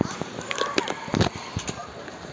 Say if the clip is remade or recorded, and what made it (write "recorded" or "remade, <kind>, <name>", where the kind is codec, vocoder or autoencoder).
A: recorded